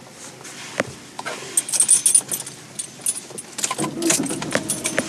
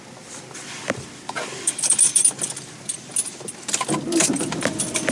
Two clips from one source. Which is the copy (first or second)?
second